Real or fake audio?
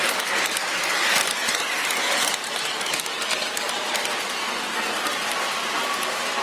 real